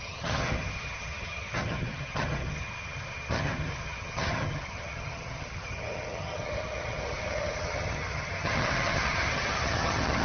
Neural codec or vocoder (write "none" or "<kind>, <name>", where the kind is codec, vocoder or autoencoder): vocoder, HiFi-GAN